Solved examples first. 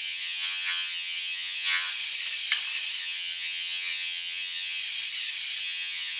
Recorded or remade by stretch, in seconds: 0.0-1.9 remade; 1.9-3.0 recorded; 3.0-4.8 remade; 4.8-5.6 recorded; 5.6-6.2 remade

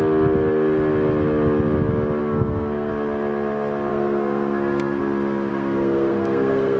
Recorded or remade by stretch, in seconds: 0.0-2.2 recorded; 2.2-2.9 remade; 2.9-3.9 recorded; 3.9-5.0 remade; 5.0-5.5 recorded; 5.5-6.8 remade